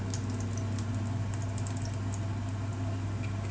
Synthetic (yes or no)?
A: no